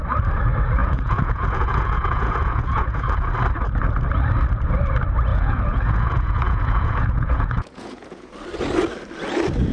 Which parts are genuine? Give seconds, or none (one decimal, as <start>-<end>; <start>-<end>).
0.0-0.8; 3.3-5.3; 8.3-9.7